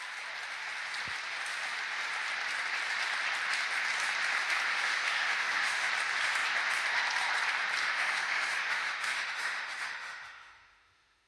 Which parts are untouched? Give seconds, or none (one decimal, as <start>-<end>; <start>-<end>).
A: 0.0-4.7; 5.9-7.8